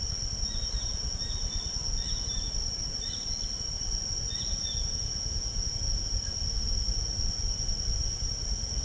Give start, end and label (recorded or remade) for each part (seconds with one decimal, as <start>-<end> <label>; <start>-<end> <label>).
0.0-4.5 recorded; 4.5-5.7 remade; 5.7-8.8 recorded